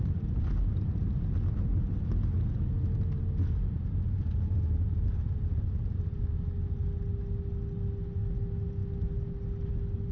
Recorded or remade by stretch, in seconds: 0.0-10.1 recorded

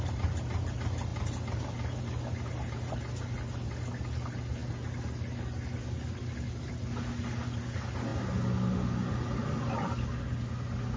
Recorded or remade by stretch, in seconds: 0.0-11.0 recorded

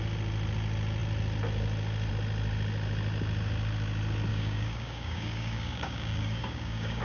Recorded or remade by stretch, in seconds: 0.0-4.3 recorded; 4.3-7.0 remade

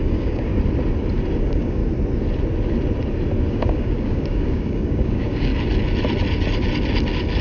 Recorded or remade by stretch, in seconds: 0.0-0.5 remade; 0.5-1.4 recorded; 1.4-1.8 remade; 1.8-3.5 recorded; 3.5-5.5 remade; 5.5-7.4 recorded